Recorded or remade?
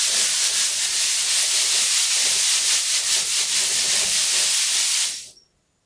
recorded